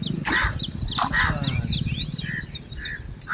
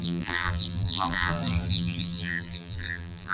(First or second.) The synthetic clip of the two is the second